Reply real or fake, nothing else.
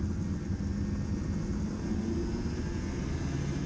real